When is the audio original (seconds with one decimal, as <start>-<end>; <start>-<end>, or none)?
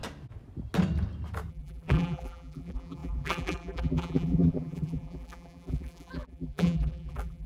0.0-1.5